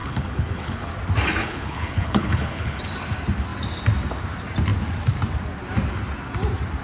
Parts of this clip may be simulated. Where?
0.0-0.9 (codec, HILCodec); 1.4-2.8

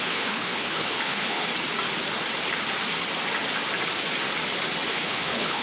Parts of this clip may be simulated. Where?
0.0-1.5 (codec, HILCodec); 4.9-5.6

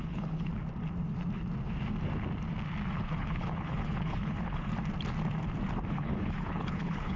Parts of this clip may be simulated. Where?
0.0-0.5 (codec, HILCodec); 2.9-4.7; 5.9-7.2

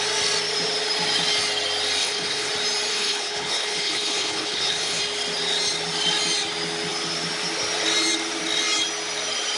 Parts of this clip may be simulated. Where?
2.0-2.5 (codec, HILCodec); 2.9-5.0

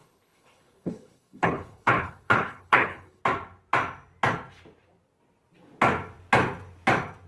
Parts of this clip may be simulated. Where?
0.0-3.2 (codec, HILCodec)

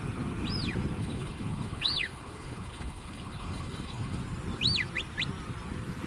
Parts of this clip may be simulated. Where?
1.0-4.2 (codec, HILCodec)